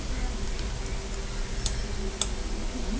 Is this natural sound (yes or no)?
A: yes